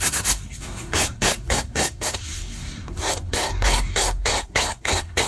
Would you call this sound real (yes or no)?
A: no